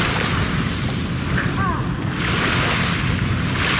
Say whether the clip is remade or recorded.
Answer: recorded